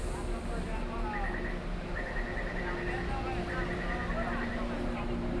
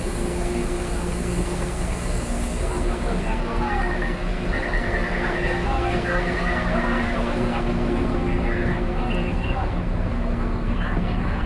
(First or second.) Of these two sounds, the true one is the first